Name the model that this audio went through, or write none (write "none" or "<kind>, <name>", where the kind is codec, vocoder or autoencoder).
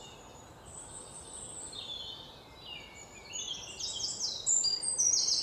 none